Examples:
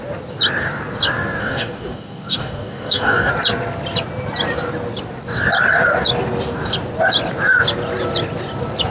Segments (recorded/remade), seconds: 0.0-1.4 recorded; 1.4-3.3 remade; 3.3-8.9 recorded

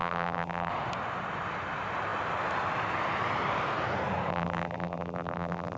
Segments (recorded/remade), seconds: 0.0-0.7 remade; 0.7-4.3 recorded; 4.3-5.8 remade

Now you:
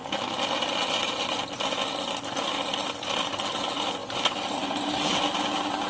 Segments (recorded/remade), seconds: 0.0-5.9 recorded

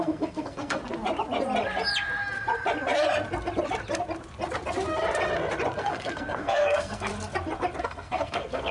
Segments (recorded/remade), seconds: 0.0-0.8 remade; 0.8-5.8 recorded; 5.8-7.1 remade; 7.1-7.8 recorded; 7.8-8.7 remade

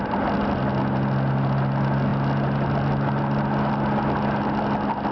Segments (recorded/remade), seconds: 0.0-5.1 recorded